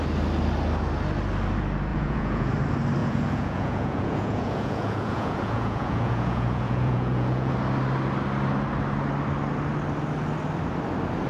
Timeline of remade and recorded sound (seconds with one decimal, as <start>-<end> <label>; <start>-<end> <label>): 0.0-1.9 recorded; 1.9-2.5 remade; 2.5-3.0 recorded; 3.0-7.5 remade; 7.5-11.3 recorded